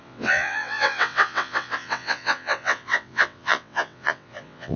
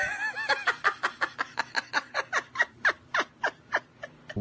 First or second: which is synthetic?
first